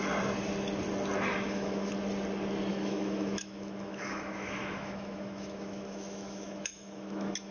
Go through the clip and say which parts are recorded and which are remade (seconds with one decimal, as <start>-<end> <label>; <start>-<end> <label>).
0.0-1.3 recorded; 1.3-1.9 remade; 1.9-2.7 recorded; 2.7-7.5 remade